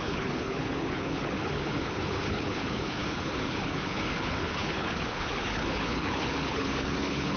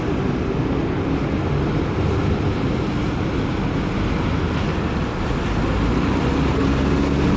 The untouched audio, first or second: second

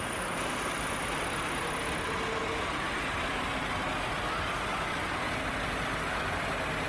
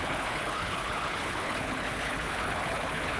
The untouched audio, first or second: first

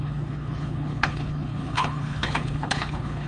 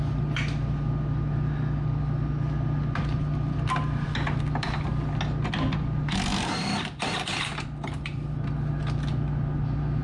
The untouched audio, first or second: second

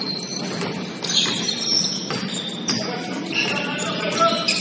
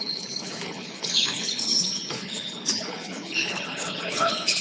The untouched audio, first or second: first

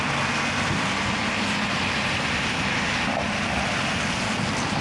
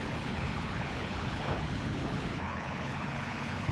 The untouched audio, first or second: first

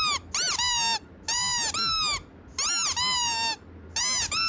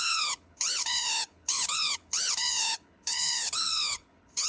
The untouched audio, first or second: first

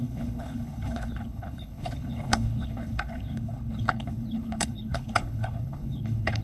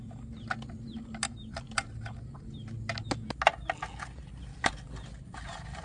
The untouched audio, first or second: second